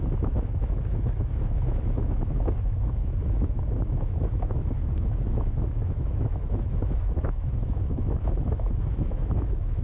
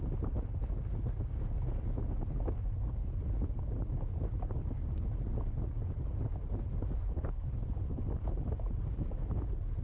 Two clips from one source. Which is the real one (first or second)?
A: second